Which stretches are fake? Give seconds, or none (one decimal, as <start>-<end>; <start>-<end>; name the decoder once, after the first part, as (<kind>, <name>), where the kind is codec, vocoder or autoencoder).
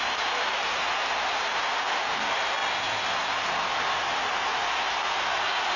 none